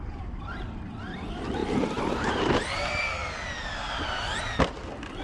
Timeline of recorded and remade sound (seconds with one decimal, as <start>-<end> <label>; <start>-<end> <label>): 0.0-5.2 recorded